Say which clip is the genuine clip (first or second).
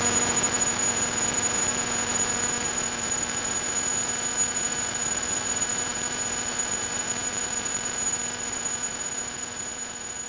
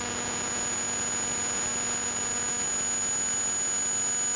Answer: second